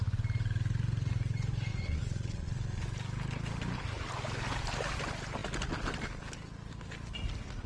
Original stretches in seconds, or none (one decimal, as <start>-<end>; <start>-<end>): 0.0-1.7; 2.8-7.7